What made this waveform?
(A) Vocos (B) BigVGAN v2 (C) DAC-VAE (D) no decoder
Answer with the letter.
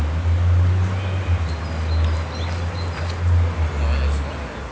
D